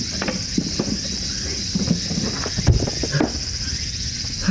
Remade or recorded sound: recorded